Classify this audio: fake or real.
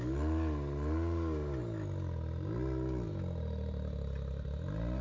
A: real